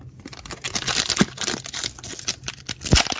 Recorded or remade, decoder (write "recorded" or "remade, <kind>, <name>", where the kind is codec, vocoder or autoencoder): recorded